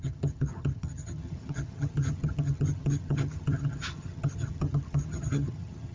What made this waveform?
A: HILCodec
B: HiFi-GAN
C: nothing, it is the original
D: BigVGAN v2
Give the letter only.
B